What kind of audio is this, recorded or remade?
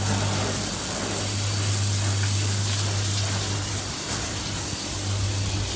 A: recorded